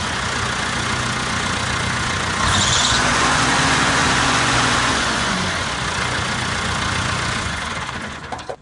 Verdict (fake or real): fake